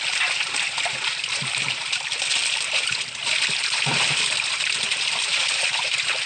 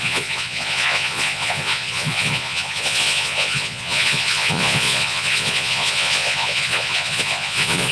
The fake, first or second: second